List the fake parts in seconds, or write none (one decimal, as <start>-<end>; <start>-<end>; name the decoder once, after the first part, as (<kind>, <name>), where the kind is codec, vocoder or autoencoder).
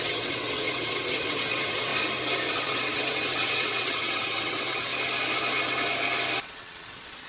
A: 0.0-1.9 (vocoder, WaveNeXt); 2.5-4.9; 6.5-7.3